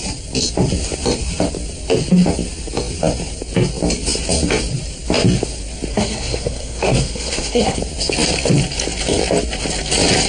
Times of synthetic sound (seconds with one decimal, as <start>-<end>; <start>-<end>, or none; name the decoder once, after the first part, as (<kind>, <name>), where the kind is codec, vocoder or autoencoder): 5.9-7.8 (codec, SNAC)